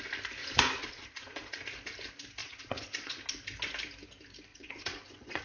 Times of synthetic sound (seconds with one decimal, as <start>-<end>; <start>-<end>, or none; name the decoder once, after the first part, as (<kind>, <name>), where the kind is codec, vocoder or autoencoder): 0.4-1.6 (vocoder, Vocos); 2.4-3.2; 4.5-5.4